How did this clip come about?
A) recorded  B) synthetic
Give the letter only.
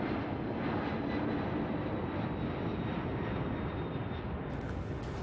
A